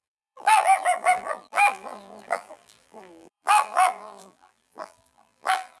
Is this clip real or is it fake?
fake